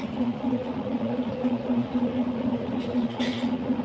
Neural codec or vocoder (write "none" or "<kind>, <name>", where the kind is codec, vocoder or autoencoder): vocoder, Vocos